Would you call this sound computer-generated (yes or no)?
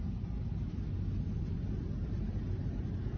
no